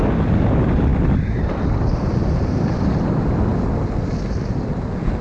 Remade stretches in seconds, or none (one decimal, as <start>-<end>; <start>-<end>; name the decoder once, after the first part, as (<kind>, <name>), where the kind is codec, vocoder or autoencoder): 0.9-2.5 (vocoder, BigVGAN v2)